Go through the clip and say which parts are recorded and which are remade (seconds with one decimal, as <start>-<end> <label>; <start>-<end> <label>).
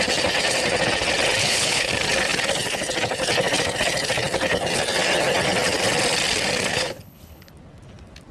0.0-1.4 recorded; 1.4-1.9 remade; 1.9-6.7 recorded; 6.7-7.5 remade; 7.5-8.3 recorded